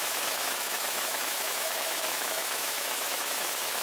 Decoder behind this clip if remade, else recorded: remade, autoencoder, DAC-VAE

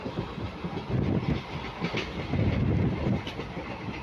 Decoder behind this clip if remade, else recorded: recorded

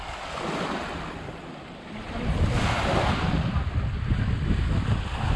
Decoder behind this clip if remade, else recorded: recorded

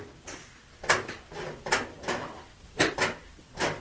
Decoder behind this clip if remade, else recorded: recorded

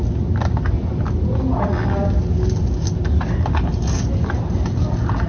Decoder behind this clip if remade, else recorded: recorded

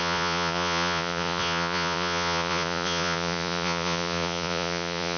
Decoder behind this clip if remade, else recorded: remade, vocoder, Vocos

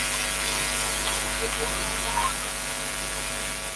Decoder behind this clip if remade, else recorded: recorded